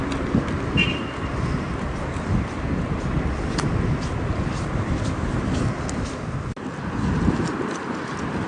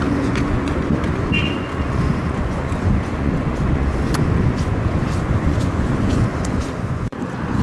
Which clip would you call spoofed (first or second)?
second